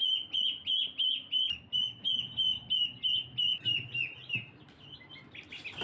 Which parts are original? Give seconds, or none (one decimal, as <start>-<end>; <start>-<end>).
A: 0.0-5.8